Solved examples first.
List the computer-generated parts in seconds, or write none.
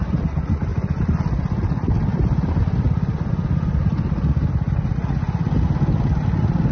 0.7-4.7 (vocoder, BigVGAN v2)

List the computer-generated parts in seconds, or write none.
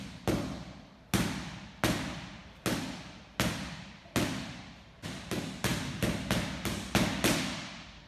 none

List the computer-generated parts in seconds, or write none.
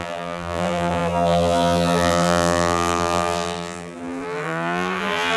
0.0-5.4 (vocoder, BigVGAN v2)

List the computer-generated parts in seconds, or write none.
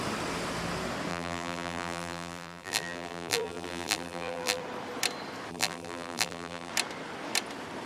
1.1-4.6 (vocoder, BigVGAN v2); 5.5-6.7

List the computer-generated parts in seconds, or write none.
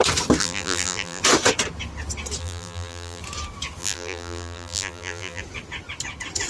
0.4-1.2 (vocoder, BigVGAN v2); 2.4-3.2; 3.8-5.4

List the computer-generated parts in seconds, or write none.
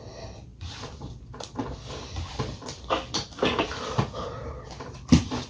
0.5-1.2 (vocoder, BigVGAN v2); 2.3-3.8; 4.3-5.5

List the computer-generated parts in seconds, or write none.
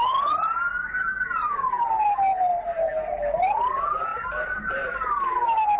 2.3-2.9 (vocoder, BigVGAN v2); 4.1-5.8